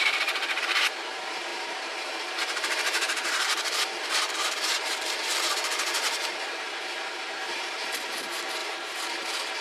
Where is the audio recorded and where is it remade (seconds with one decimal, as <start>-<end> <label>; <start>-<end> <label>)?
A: 0.0-9.6 remade

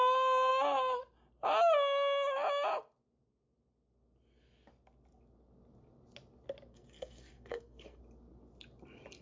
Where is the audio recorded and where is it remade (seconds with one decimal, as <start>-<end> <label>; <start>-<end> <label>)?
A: 0.0-6.7 recorded; 6.7-8.0 remade; 8.0-9.2 recorded

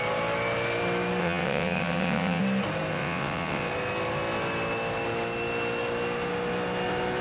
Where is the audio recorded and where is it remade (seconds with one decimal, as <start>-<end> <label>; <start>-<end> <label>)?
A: 0.0-1.2 recorded; 1.2-2.4 remade; 2.4-2.9 recorded; 2.9-3.7 remade; 3.7-7.2 recorded

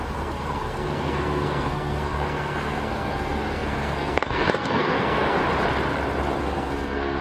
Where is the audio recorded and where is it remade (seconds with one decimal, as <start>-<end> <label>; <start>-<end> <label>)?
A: 0.0-5.4 remade; 5.4-6.4 recorded; 6.4-7.2 remade